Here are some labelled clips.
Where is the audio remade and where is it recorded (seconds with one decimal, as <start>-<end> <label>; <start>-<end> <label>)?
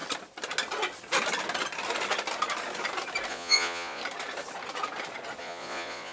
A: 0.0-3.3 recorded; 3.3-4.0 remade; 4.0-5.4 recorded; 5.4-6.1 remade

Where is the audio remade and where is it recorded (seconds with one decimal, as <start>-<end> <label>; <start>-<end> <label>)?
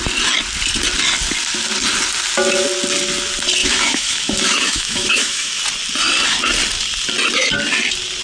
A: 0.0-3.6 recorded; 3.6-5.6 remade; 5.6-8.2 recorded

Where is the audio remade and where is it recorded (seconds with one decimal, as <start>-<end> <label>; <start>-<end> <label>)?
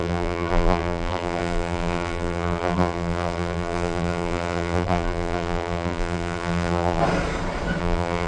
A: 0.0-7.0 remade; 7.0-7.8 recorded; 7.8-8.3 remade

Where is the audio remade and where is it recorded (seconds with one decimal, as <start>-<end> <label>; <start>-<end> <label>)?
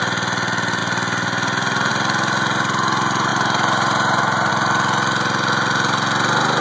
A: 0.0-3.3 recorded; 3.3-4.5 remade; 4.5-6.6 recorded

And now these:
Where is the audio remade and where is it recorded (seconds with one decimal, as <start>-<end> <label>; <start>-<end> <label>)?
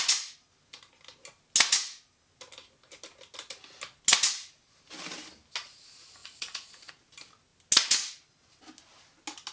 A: 0.0-6.2 recorded; 6.2-6.9 remade; 6.9-9.5 recorded